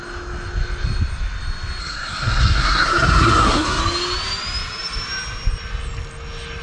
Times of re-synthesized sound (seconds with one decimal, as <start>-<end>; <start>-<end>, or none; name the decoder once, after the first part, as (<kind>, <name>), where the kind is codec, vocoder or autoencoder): 1.8-3.8 (codec, SNAC)

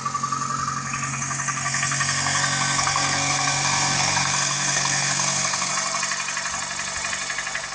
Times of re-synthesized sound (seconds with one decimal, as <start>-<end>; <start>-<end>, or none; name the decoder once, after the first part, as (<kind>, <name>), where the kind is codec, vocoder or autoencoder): 1.1-5.7 (codec, SNAC)

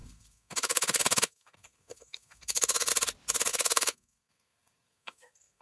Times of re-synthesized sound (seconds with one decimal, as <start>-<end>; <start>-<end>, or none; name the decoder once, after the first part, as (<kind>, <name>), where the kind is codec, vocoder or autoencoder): 0.0-2.9 (codec, SNAC); 3.5-5.6

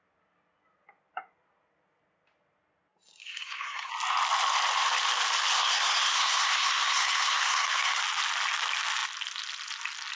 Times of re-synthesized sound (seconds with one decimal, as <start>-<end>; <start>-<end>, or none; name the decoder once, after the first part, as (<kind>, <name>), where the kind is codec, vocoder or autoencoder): 3.2-3.9 (codec, SNAC); 5.5-8.0

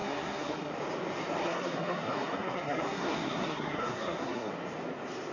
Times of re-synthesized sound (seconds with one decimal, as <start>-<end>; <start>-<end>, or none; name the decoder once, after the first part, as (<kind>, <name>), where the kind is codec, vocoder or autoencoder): 0.0-0.7 (codec, SNAC); 1.4-4.5